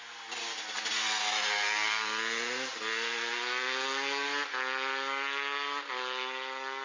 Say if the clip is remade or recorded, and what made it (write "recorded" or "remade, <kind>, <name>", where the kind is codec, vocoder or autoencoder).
recorded